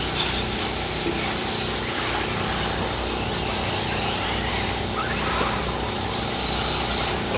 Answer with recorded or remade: recorded